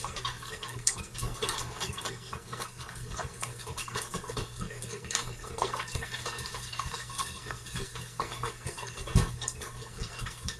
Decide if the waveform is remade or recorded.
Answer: remade